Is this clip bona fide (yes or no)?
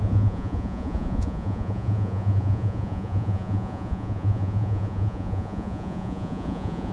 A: no